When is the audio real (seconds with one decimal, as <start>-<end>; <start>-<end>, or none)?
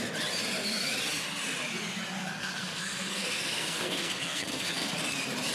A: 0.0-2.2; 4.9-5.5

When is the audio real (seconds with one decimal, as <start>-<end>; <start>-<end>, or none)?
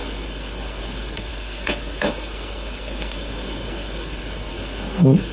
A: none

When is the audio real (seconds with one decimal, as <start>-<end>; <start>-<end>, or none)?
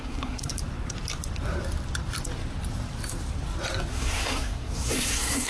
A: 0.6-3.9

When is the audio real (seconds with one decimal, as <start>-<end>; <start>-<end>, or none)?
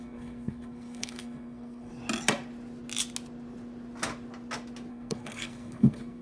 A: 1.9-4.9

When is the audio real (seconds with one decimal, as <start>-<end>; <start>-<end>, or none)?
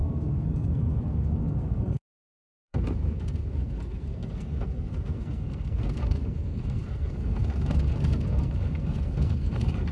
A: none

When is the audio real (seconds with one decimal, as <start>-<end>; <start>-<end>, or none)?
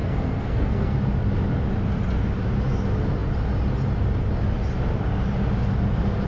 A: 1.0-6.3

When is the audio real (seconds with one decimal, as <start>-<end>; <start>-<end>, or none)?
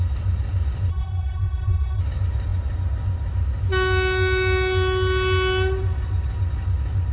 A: 0.0-0.9; 2.0-7.1